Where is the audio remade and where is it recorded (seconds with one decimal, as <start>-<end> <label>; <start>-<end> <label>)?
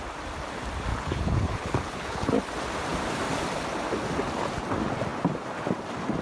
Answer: 0.0-0.9 recorded; 0.9-2.3 remade; 2.3-6.2 recorded